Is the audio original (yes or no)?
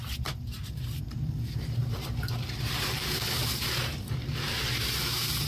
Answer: no